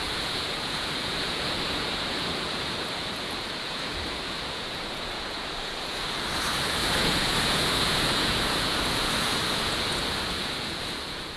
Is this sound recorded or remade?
remade